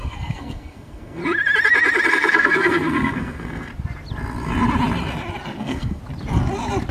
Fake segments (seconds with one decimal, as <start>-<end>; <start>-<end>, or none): 0.0-1.2; 2.1-3.7; 5.6-6.0